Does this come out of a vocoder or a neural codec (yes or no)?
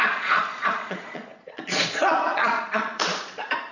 yes